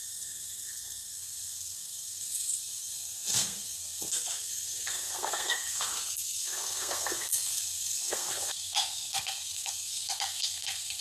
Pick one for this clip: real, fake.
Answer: fake